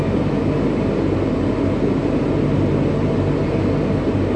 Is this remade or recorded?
recorded